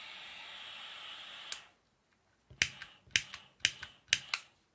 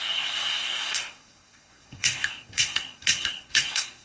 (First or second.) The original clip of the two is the first